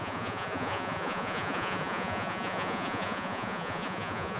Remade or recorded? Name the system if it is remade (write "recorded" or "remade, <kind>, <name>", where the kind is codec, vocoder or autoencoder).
remade, vocoder, Vocos